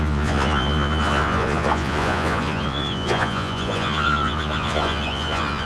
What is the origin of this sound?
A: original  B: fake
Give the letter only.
B